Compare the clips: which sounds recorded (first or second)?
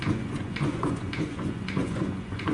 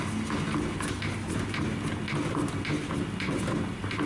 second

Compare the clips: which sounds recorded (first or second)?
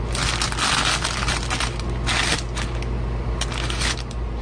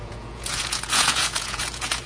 first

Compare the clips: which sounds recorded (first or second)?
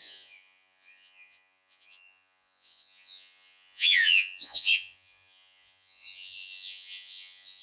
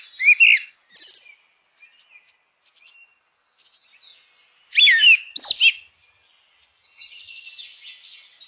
second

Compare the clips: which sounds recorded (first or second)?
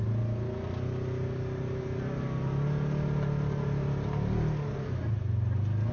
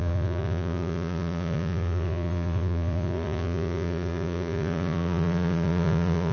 first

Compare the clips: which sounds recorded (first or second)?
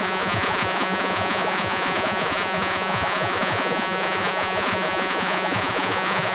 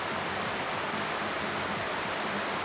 second